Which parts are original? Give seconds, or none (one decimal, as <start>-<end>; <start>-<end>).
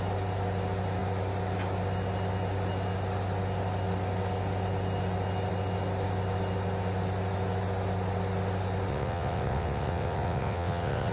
0.0-8.9